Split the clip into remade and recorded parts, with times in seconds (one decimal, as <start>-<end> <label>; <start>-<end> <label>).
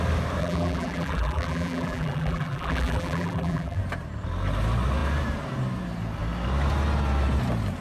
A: 0.0-0.4 recorded; 0.4-3.8 remade; 3.8-7.8 recorded